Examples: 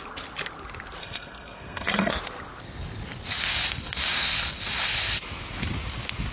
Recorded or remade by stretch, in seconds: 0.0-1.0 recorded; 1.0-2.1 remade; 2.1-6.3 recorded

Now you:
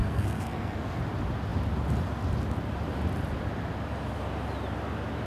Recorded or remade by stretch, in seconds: 0.0-1.0 remade; 1.0-5.3 recorded

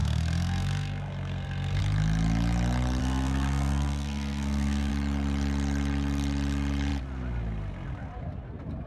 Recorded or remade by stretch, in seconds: 0.0-1.8 remade; 1.8-3.0 recorded; 3.0-4.9 remade; 4.9-8.9 recorded

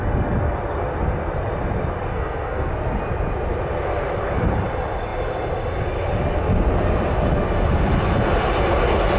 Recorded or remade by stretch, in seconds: 0.0-2.1 recorded; 2.1-2.7 remade; 2.7-9.2 recorded

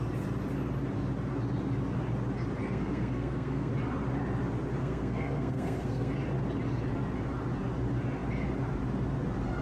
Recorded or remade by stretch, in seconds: 0.0-2.6 recorded; 2.6-3.7 remade; 3.7-4.8 recorded; 4.8-6.1 remade; 6.1-9.6 recorded

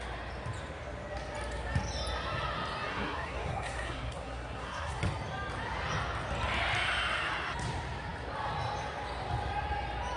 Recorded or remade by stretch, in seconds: 0.0-2.9 recorded; 2.9-5.0 remade; 5.0-10.2 recorded

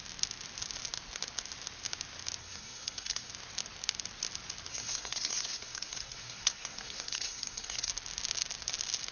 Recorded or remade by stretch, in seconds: 0.0-2.4 recorded; 2.4-3.3 remade; 3.3-4.7 recorded; 4.7-7.9 remade; 7.9-9.1 recorded

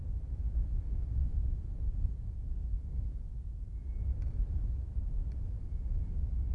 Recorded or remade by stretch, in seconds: 0.0-6.5 recorded